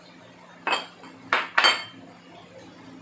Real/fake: real